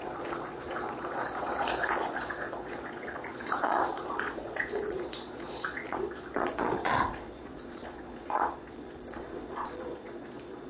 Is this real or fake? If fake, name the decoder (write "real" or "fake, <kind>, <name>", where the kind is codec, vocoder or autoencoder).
fake, vocoder, Vocos